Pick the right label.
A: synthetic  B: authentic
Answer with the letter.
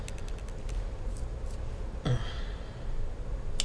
B